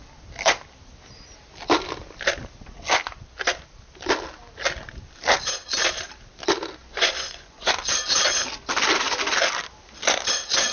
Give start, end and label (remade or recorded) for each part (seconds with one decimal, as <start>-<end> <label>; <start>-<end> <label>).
0.0-6.8 recorded; 6.8-7.7 remade; 7.7-10.7 recorded